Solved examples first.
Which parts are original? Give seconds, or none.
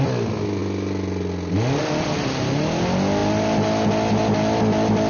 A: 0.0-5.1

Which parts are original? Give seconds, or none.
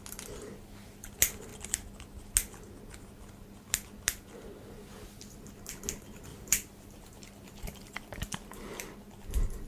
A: 0.0-6.3; 8.2-9.7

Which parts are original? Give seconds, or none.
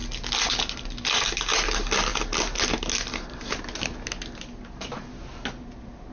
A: 0.0-6.1